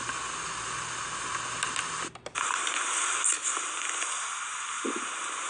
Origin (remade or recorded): recorded